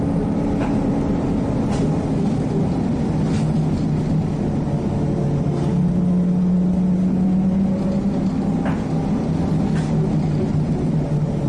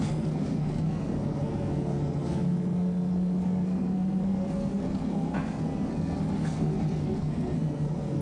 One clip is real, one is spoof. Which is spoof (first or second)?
second